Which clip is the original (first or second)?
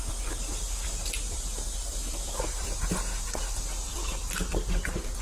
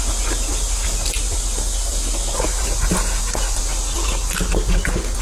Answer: second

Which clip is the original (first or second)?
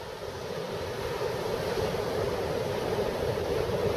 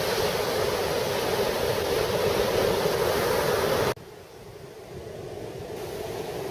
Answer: second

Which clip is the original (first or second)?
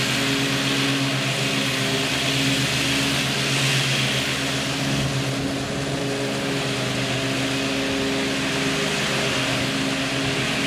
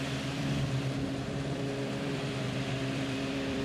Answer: first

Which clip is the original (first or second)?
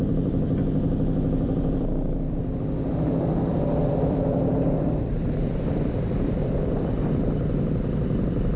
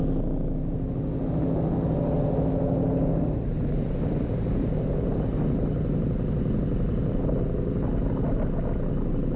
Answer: second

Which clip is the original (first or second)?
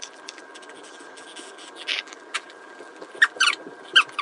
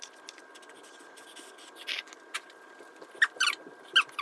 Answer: second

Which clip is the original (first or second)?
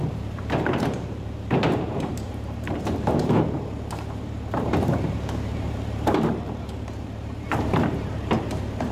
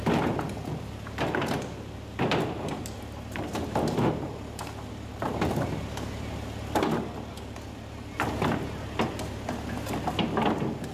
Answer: second